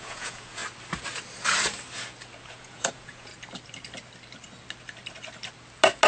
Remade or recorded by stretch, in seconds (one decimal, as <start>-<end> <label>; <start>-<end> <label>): 0.0-0.6 remade; 0.6-2.4 recorded; 2.4-3.3 remade; 3.3-6.1 recorded